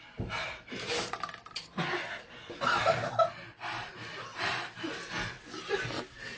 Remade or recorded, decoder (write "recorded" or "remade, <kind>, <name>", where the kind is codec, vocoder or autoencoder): remade, vocoder, BigVGAN v2